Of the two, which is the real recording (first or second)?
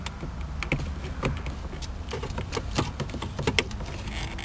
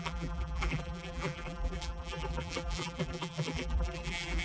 first